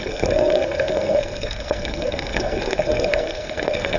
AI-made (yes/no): yes